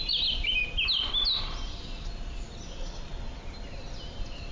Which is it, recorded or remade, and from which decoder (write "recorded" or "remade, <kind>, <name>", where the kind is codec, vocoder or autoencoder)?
recorded